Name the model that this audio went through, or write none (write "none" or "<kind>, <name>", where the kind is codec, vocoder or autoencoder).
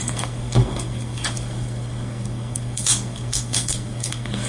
codec, SNAC